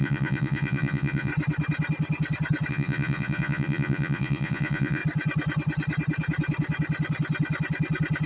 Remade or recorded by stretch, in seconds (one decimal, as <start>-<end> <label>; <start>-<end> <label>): 0.0-1.3 remade; 1.3-2.7 recorded; 2.7-5.0 remade; 5.0-8.3 recorded

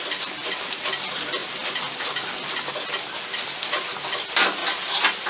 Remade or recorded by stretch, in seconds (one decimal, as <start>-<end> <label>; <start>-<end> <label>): 0.0-5.3 recorded

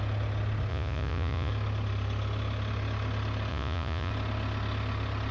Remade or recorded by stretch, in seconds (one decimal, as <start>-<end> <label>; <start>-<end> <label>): 0.0-0.7 recorded; 0.7-1.5 remade; 1.5-3.5 recorded; 3.5-4.1 remade; 4.1-5.3 recorded

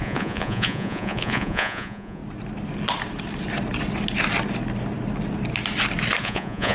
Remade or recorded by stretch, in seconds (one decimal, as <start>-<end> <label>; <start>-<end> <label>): 0.0-2.2 remade; 2.2-6.2 recorded; 6.2-6.7 remade

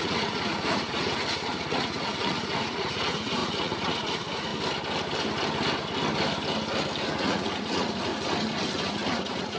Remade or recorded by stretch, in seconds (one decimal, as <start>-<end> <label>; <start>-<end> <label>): 0.0-4.5 remade; 4.5-7.2 recorded; 7.2-8.1 remade; 8.1-8.9 recorded; 8.9-9.6 remade

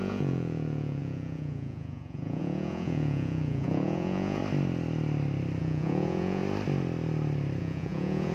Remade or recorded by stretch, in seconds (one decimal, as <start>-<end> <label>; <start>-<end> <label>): 0.0-4.4 remade; 4.4-5.6 recorded; 5.6-6.4 remade; 6.4-7.6 recorded; 7.6-8.3 remade